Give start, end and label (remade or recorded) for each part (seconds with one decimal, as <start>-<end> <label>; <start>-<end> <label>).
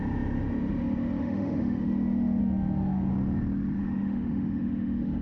0.0-1.2 recorded; 1.2-1.8 remade; 1.8-2.4 recorded; 2.4-3.1 remade; 3.1-3.8 recorded; 3.8-5.2 remade